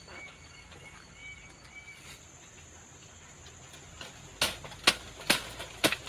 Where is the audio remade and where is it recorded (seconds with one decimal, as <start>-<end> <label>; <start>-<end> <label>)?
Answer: 0.0-6.1 recorded